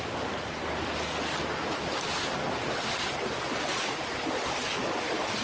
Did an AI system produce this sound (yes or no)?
no